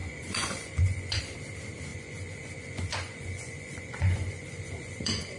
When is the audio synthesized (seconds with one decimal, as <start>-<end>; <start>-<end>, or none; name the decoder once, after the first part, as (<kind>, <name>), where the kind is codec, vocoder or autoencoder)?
0.0-1.2 (vocoder, Vocos); 1.9-5.4